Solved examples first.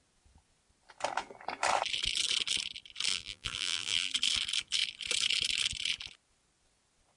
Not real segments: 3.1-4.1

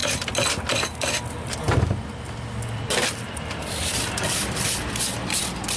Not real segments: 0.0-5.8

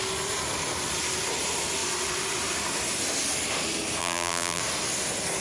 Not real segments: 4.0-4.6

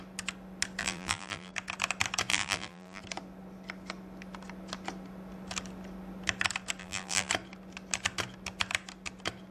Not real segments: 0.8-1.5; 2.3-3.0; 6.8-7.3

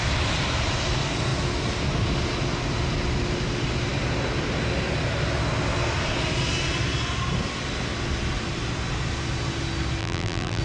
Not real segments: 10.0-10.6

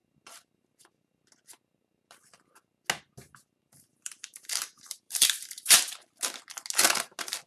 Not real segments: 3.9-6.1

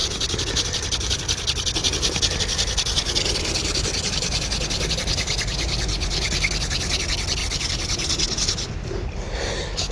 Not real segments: 5.5-6.1